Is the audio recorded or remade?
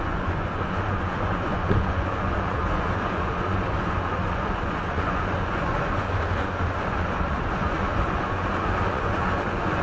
remade